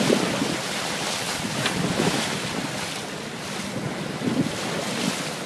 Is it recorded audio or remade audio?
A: recorded